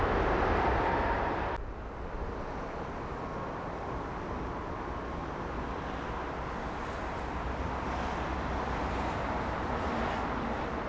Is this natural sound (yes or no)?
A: yes